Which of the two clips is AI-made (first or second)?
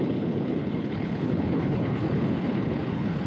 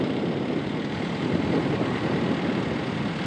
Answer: first